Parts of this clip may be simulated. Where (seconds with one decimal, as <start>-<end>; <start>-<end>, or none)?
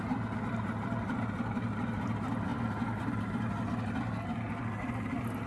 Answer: none